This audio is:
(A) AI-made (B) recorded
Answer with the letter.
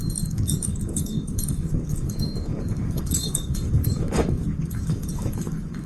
A